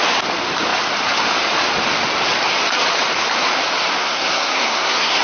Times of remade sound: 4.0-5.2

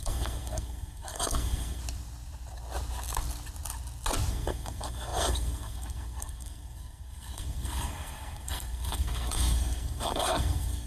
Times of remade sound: 0.0-1.8; 4.3-10.9

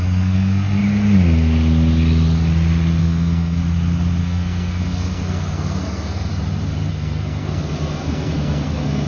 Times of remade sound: 0.0-0.8; 3.0-3.6; 4.2-6.3; 6.9-9.1

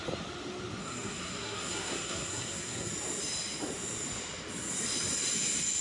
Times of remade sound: 0.8-2.9

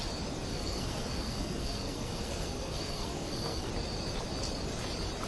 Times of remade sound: 0.5-3.7

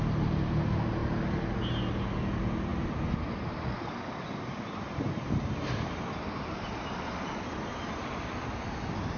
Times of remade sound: none

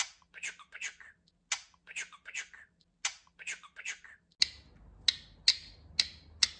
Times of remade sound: none